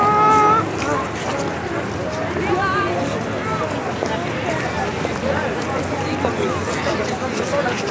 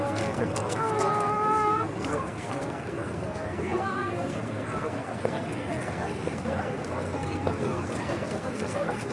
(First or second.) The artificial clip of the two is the second